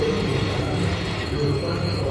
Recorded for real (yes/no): no